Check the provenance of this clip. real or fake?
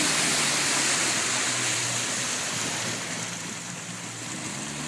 real